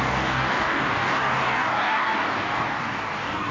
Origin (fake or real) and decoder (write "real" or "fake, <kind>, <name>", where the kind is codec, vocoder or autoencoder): fake, codec, DAC